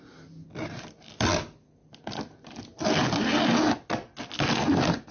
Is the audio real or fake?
real